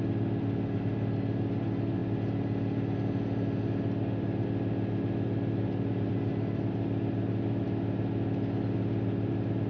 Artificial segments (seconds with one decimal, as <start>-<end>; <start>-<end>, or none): none